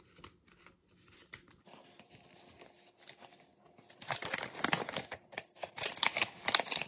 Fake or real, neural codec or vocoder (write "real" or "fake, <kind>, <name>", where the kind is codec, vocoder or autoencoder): real